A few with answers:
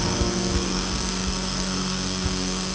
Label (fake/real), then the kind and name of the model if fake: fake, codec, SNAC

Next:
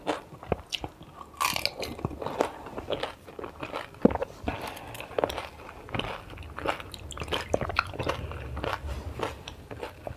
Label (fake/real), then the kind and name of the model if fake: real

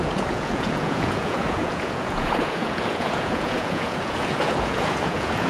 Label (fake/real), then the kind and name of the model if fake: fake, vocoder, Vocos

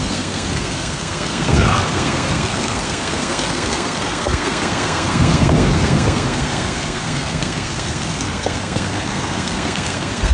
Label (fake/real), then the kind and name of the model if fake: fake, codec, SNAC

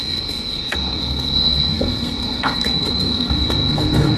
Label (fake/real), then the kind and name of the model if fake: fake, codec, SNAC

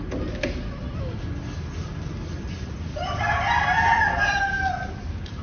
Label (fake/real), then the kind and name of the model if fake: real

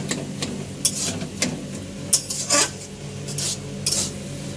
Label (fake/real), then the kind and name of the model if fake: real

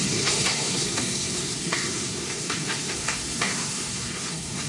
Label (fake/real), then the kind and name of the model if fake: fake, codec, SNAC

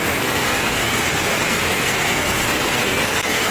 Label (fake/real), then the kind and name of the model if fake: fake, codec, SNAC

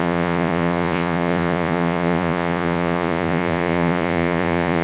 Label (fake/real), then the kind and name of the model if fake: fake, vocoder, Vocos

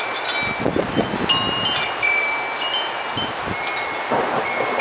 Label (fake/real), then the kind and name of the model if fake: real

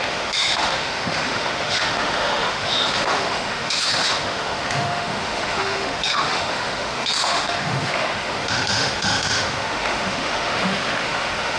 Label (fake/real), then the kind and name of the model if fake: fake, autoencoder, DAC-VAE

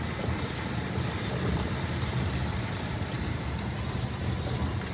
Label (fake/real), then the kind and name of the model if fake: fake, vocoder, BigVGAN v2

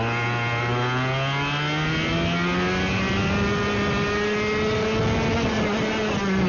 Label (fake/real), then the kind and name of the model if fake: real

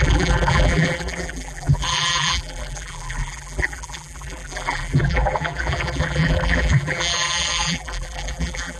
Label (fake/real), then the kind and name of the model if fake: fake, vocoder, BigVGAN v2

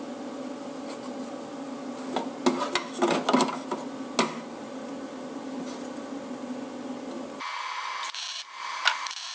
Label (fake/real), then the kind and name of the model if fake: real